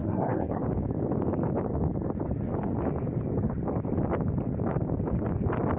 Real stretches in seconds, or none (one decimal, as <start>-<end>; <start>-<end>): 0.6-5.8